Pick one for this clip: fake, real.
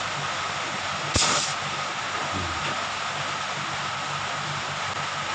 real